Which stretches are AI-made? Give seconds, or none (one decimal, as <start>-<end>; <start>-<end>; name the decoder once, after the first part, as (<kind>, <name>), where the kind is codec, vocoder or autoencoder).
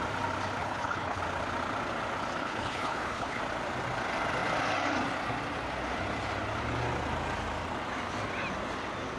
0.6-1.2 (codec, HILCodec); 2.4-3.4